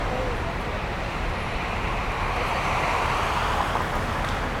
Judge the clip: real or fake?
fake